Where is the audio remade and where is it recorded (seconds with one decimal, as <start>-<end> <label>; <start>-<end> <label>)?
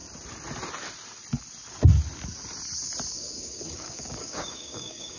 0.0-3.1 recorded; 3.1-5.2 remade